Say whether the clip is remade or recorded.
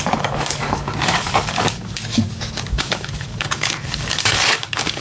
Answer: remade